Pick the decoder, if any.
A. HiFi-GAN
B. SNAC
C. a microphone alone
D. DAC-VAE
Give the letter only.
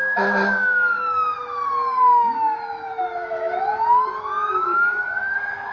D